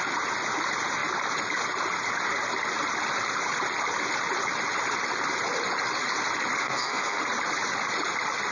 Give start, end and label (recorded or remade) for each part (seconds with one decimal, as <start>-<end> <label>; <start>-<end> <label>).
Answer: 0.0-6.6 recorded; 6.6-7.2 remade; 7.2-8.5 recorded